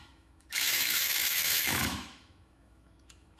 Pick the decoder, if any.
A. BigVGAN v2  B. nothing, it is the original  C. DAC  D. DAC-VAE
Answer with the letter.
D